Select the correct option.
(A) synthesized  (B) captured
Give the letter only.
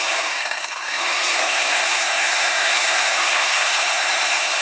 A